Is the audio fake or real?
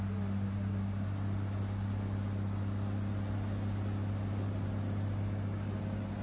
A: real